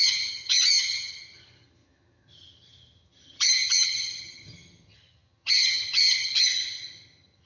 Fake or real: fake